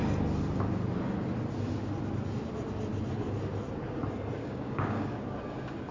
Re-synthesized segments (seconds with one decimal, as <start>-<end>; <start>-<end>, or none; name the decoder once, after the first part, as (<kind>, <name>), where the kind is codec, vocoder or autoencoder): 4.4-5.2 (codec, DAC)